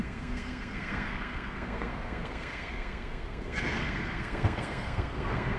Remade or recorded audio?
remade